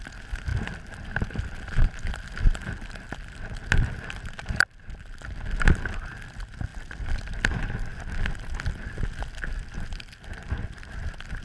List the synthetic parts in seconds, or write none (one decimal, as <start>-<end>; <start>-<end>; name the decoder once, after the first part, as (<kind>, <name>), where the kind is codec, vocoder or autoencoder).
none